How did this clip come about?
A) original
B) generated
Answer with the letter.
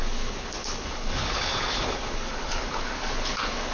B